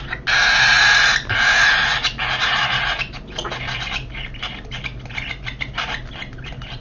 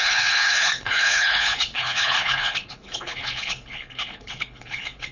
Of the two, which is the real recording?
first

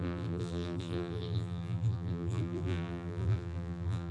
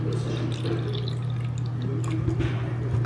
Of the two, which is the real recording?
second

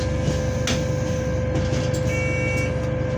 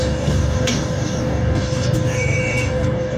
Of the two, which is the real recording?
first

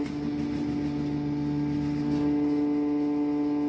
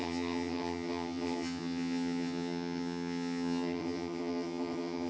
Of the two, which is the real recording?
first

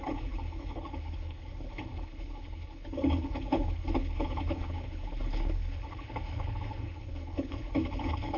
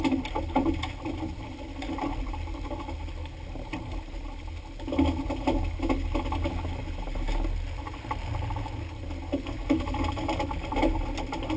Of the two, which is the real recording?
second